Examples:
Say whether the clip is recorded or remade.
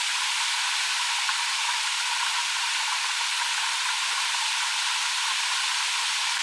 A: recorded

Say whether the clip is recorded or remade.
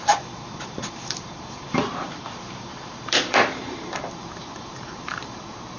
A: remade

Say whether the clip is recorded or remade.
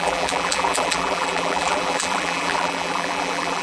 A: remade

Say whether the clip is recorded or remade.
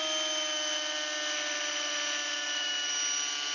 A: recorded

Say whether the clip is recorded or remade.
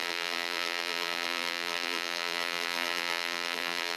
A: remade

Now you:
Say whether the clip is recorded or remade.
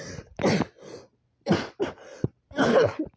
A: remade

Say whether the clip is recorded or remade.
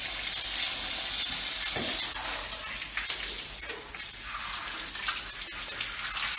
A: recorded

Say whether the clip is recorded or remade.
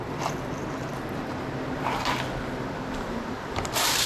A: recorded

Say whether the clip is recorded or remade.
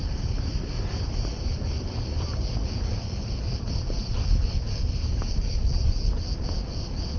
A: remade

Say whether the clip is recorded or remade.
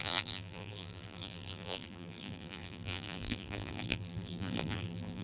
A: remade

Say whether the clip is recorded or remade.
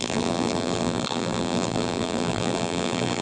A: remade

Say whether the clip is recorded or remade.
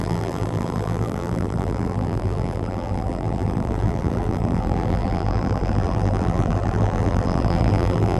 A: remade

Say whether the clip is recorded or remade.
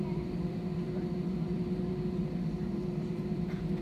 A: remade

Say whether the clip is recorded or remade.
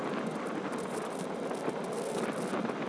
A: recorded